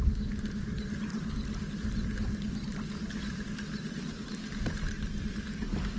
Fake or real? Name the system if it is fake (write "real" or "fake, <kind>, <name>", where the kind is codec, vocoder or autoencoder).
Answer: real